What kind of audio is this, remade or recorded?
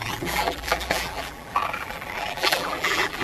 remade